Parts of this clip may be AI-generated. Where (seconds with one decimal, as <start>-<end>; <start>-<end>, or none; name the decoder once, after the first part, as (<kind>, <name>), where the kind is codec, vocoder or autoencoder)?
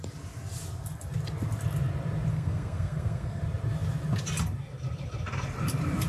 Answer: 2.3-3.4 (codec, SNAC)